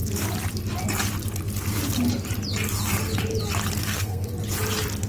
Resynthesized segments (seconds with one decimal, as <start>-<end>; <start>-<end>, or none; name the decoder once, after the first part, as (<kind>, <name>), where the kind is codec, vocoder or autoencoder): 3.8-4.3 (codec, SNAC)